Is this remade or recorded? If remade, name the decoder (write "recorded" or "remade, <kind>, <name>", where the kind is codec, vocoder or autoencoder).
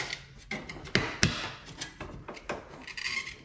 recorded